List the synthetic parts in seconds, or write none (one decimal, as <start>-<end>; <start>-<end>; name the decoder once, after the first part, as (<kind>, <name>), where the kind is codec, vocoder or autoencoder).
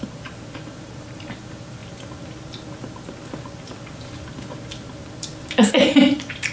0.0-1.8 (vocoder, BigVGAN v2); 5.7-6.5